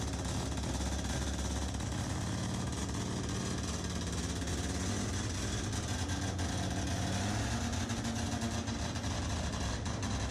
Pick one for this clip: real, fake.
real